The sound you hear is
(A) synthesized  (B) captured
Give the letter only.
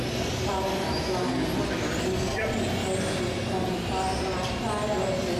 B